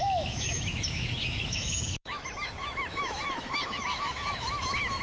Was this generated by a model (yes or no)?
yes